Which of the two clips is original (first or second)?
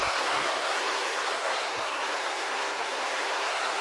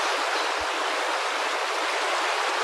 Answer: second